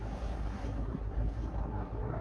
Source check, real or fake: fake